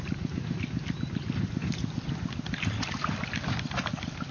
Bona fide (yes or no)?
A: yes